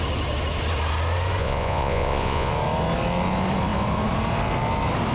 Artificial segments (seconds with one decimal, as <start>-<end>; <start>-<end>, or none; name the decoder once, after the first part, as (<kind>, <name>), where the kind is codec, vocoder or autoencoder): 1.4-2.5 (vocoder, Vocos)